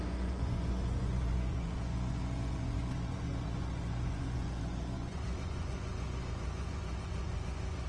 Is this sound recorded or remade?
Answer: remade